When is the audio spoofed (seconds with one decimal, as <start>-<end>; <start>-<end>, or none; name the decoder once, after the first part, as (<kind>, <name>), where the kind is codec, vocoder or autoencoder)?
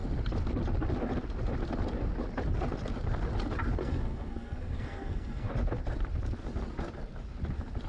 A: 3.8-5.5 (codec, SNAC)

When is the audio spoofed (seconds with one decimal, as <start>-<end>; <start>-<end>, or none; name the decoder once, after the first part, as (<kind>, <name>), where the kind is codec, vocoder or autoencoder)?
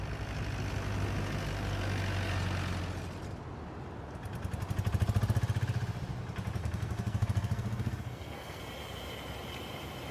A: 6.6-8.6 (codec, SNAC)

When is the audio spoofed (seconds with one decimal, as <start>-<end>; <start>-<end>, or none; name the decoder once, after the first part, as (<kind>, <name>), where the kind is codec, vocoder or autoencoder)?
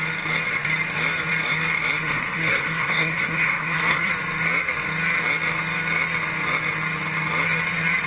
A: 2.0-4.1 (codec, SNAC)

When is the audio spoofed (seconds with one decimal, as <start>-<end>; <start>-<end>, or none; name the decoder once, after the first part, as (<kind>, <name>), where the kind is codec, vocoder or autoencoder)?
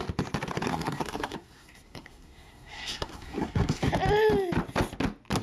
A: 0.7-3.9 (codec, SNAC)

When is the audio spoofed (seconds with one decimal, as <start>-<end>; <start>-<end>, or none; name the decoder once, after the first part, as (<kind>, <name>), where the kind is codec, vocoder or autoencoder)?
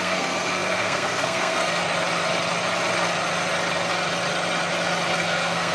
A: 0.0-1.8 (codec, SNAC); 5.1-5.7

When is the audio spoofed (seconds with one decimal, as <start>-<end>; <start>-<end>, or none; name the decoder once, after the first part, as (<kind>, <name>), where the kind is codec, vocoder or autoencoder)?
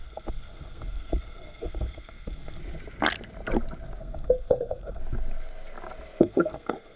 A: 0.0-2.6 (codec, SNAC); 4.0-5.0; 6.2-7.0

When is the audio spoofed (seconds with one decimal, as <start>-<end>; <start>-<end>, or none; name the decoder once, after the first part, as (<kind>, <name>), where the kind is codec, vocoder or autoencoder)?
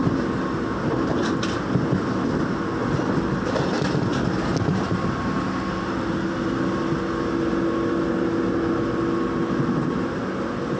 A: none